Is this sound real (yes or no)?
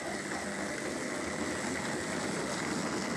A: yes